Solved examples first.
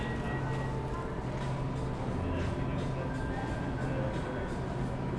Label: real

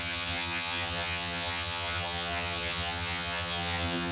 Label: fake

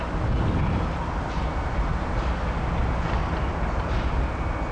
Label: real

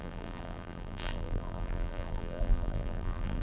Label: fake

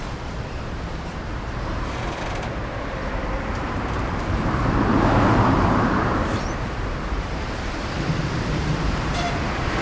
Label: fake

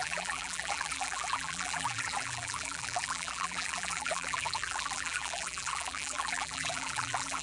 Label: fake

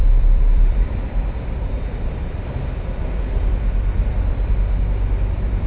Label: fake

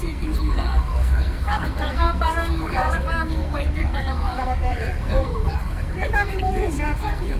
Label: fake